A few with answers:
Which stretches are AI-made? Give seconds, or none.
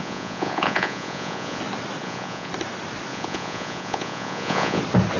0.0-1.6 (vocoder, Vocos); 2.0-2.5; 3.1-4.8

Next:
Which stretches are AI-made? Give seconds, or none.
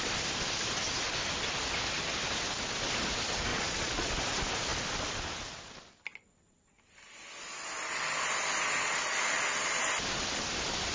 3.5-4.1 (vocoder, Vocos)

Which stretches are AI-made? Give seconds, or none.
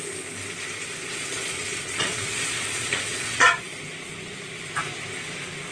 1.3-3.8 (vocoder, Vocos)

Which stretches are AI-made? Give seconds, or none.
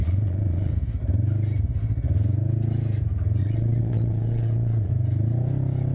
0.0-0.7 (vocoder, Vocos); 3.4-4.9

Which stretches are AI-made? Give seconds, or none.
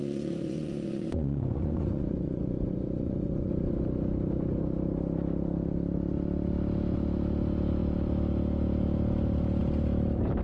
0.0-3.5 (vocoder, Vocos)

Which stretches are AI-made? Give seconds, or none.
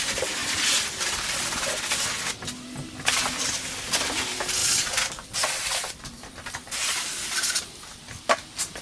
none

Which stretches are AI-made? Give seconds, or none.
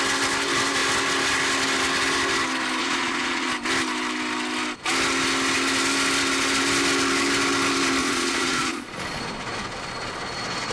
2.8-3.5 (vocoder, Vocos); 8.0-9.2